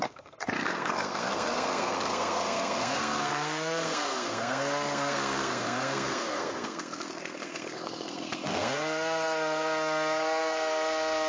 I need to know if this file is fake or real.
fake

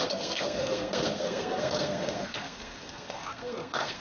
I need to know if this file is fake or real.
fake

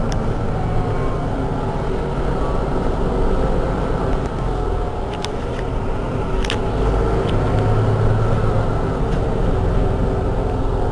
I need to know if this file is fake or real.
real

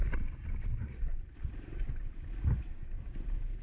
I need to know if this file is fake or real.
real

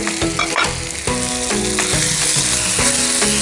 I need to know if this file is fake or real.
real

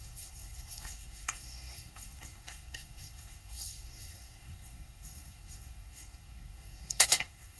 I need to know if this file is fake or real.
fake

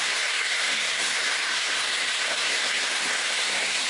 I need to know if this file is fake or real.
fake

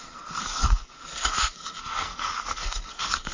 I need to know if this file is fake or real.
fake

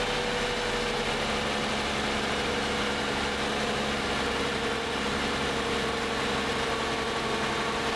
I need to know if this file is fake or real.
real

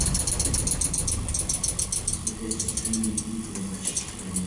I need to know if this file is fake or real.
real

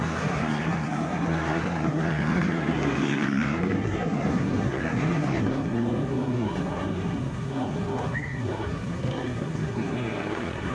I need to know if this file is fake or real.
fake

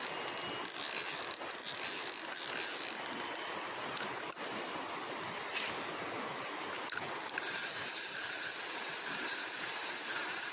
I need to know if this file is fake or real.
real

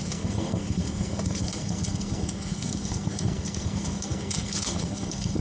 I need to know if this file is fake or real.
fake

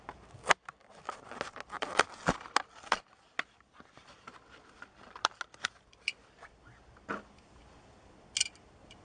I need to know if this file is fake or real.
real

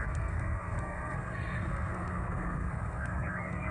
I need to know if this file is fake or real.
fake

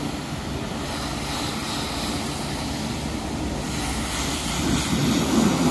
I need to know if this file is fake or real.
real